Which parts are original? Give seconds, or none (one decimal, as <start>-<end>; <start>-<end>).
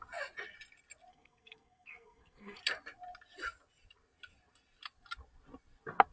0.0-1.1; 2.6-6.1